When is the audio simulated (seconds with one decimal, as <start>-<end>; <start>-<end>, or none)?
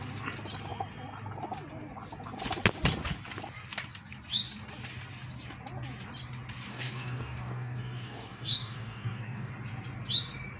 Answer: 6.7-9.5